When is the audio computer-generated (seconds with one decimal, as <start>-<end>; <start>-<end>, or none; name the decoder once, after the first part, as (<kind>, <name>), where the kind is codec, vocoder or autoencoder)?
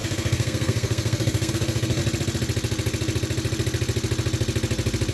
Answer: 0.0-2.0 (codec, SNAC)